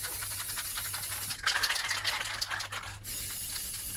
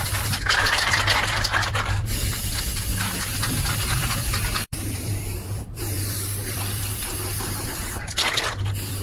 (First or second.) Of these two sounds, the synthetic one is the second